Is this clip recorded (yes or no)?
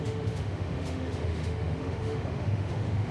no